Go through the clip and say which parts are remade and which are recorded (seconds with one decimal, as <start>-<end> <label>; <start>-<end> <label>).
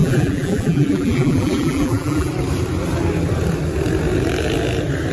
0.0-2.3 remade; 2.3-5.1 recorded